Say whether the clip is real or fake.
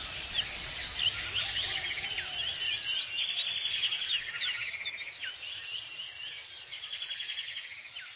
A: real